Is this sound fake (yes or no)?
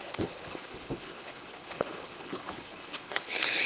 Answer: yes